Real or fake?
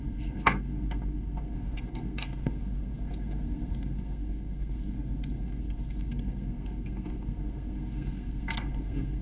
fake